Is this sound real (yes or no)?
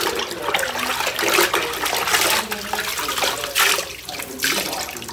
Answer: yes